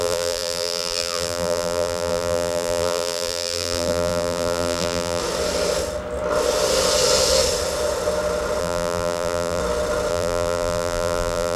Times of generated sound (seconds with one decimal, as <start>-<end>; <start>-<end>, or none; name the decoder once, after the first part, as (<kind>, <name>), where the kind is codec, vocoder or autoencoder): 0.0-5.2 (vocoder, BigVGAN v2); 8.6-9.6; 10.1-11.6